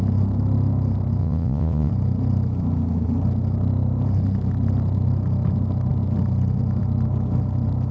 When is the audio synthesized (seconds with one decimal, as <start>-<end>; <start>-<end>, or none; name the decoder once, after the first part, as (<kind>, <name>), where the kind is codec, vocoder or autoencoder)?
1.2-1.9 (vocoder, Vocos)